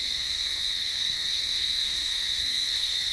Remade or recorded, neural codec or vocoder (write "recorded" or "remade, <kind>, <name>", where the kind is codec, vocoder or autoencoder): remade, codec, SNAC